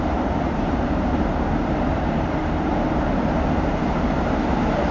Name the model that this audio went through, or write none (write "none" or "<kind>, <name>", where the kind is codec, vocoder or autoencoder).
vocoder, BigVGAN v2